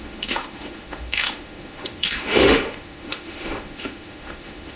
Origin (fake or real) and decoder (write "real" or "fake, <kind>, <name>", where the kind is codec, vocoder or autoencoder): fake, autoencoder, DAC-VAE